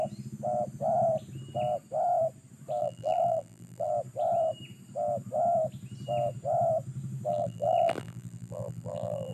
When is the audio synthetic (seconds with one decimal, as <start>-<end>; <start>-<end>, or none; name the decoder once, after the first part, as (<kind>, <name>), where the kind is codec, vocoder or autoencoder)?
2.8-3.9 (vocoder, BigVGAN v2); 7.3-9.3